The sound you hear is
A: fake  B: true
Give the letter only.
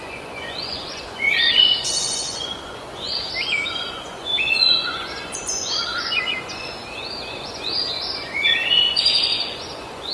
A